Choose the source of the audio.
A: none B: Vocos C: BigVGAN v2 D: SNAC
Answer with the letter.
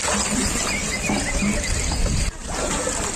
A